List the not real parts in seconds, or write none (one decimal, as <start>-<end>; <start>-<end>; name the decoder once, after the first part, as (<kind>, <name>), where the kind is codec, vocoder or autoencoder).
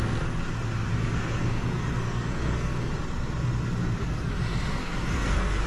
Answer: 0.9-2.9 (codec, SNAC); 4.7-5.7